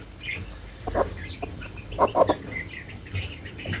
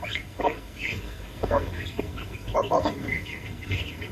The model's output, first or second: second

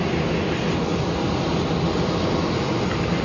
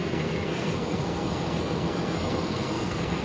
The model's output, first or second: second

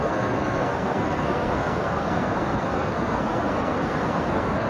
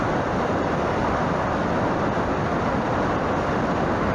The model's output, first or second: first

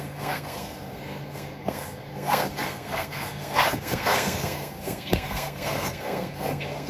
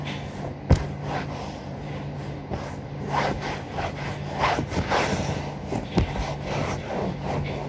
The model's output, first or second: first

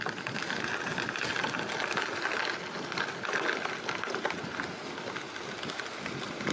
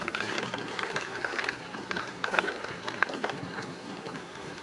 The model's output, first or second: second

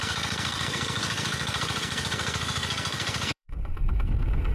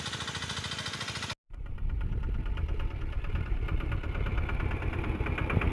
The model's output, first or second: first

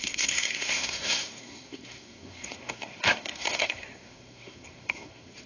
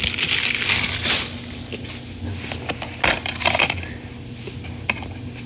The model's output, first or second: first